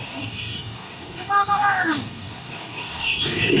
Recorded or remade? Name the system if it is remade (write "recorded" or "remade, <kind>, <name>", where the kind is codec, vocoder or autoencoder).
remade, codec, DAC